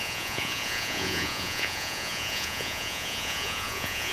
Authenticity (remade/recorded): remade